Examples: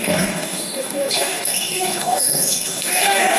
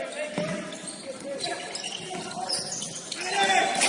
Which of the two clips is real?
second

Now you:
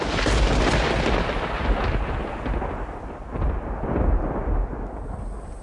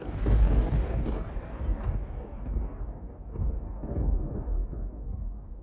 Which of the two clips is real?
first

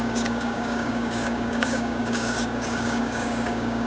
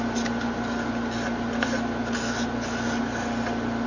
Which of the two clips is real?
second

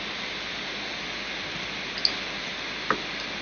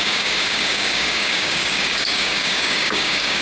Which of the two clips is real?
first